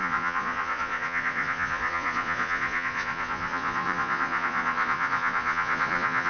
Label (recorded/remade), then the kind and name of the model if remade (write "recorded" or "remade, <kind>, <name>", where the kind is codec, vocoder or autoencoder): remade, vocoder, Vocos